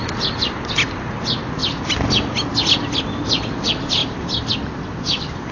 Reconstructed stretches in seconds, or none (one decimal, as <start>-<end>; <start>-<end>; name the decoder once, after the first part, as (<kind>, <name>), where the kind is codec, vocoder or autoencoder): none